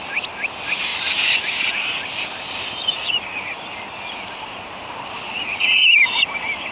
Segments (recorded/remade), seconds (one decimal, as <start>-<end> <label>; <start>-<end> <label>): 0.0-6.7 recorded

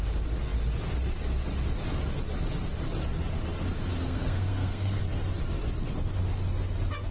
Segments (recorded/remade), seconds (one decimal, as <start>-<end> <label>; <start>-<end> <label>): 0.0-4.0 recorded; 4.0-5.0 remade; 5.0-7.1 recorded